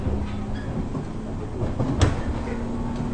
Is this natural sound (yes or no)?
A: yes